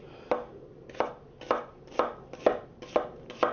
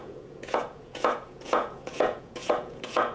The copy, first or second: second